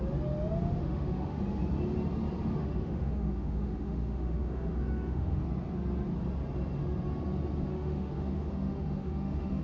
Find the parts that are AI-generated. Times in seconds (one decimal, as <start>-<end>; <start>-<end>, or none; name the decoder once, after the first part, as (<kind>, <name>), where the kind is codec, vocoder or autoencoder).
0.8-1.4 (autoencoder, DAC-VAE); 2.6-5.4; 7.7-9.6